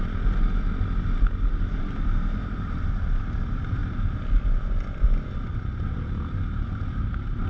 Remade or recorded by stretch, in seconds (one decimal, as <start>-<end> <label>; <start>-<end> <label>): 0.0-7.5 recorded